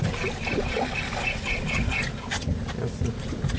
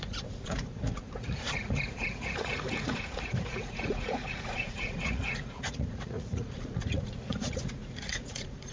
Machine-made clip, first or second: second